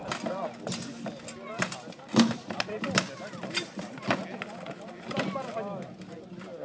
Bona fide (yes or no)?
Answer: yes